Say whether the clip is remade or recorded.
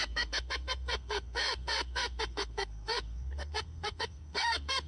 remade